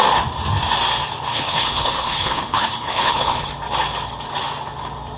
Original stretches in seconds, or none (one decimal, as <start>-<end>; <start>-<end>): 0.0-1.3; 3.5-5.2